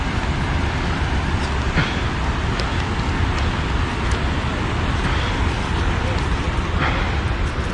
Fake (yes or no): no